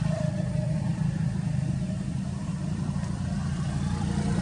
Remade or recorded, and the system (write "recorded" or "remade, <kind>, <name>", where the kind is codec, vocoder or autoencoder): remade, vocoder, BigVGAN v2